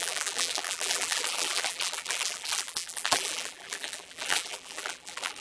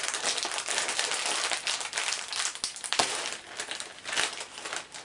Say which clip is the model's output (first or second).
first